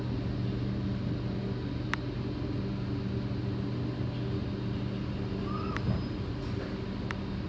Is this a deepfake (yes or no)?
no